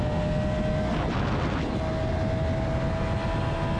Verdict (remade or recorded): recorded